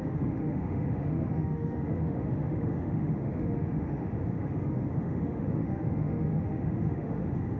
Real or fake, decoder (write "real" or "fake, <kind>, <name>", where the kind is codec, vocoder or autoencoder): fake, autoencoder, DAC-VAE